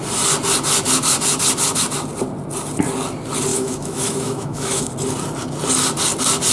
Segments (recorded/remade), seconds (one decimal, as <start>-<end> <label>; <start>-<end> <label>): 0.0-3.5 recorded; 3.5-4.9 remade; 4.9-6.5 recorded